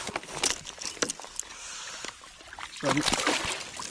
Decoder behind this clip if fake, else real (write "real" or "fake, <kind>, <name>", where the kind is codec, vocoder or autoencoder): real